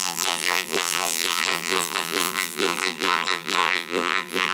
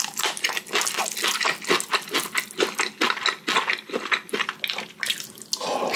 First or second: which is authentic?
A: second